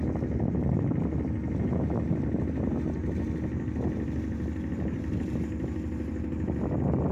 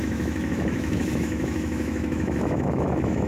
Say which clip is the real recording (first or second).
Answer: first